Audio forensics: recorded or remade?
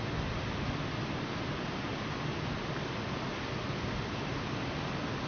recorded